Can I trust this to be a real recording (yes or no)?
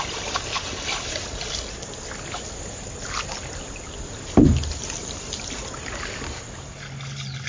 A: yes